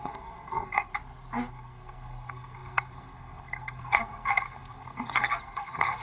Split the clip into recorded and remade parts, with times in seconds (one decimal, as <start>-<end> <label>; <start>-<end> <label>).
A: 0.0-0.9 remade; 0.9-1.5 recorded; 1.5-6.0 remade